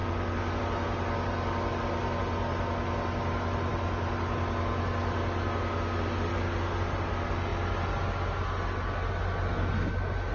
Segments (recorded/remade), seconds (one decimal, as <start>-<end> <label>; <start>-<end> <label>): 0.0-10.3 recorded